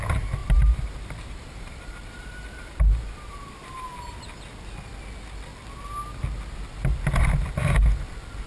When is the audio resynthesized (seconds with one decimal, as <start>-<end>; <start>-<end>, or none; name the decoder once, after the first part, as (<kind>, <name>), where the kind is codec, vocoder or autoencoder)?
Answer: 0.4-3.9 (vocoder, BigVGAN v2)